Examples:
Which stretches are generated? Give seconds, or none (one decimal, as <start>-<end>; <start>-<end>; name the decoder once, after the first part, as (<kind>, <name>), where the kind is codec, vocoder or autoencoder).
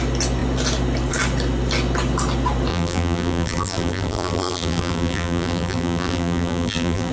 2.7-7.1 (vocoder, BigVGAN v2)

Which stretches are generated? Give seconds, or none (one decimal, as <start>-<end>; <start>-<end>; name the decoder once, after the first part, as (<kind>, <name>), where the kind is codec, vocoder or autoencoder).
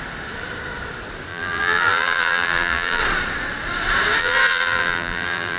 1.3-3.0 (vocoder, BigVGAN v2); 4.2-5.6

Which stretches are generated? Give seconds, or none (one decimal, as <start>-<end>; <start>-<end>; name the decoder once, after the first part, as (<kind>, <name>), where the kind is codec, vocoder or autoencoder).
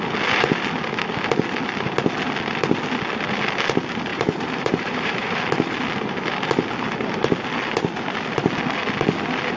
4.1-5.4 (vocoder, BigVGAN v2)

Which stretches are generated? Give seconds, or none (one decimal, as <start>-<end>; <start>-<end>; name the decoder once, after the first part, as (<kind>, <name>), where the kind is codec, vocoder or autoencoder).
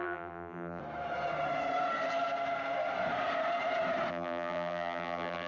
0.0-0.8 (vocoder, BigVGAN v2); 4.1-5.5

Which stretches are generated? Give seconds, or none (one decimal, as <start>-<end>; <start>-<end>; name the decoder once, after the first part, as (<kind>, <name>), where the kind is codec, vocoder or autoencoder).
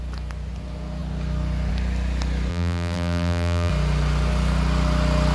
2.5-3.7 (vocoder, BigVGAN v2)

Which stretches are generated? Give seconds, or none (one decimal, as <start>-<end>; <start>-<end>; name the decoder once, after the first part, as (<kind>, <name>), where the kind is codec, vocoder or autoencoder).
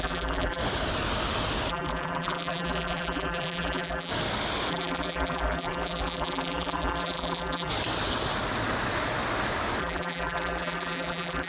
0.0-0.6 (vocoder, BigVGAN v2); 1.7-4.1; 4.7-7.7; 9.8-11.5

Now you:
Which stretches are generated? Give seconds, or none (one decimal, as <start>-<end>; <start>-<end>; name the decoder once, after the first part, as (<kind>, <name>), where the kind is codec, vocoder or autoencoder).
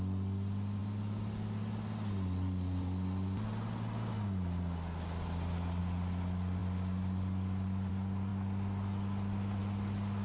none